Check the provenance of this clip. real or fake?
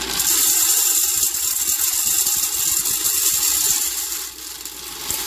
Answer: real